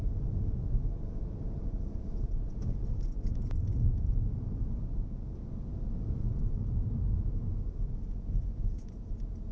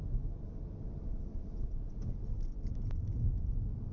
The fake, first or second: first